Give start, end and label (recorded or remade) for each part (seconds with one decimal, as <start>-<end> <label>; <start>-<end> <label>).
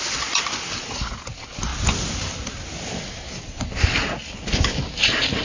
0.0-5.4 recorded